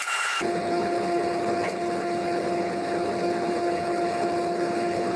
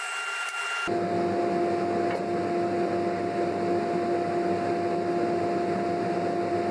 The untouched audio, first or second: second